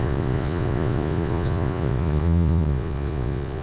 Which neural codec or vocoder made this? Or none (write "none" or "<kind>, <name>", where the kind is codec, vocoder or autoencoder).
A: vocoder, Vocos